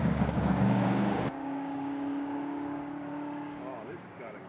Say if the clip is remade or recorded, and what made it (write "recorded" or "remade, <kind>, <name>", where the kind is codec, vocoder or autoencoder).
remade, codec, DAC